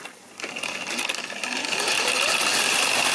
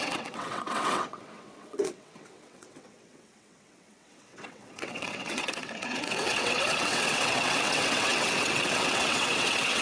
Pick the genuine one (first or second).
first